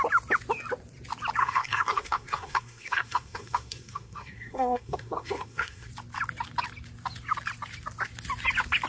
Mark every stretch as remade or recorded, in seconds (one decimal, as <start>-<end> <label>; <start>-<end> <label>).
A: 0.0-1.4 recorded; 1.4-5.9 remade; 5.9-8.9 recorded